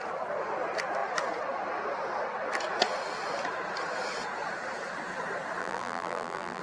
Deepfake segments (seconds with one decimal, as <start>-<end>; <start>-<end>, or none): 5.6-6.6